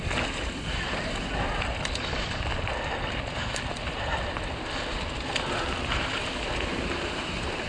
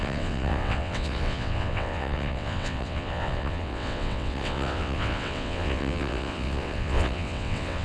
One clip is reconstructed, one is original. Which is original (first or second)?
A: first